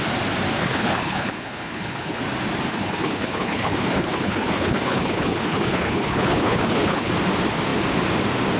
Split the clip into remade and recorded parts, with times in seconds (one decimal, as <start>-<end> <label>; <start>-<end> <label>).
0.0-0.6 recorded; 0.6-2.2 remade; 2.2-2.7 recorded; 2.7-7.1 remade; 7.1-8.6 recorded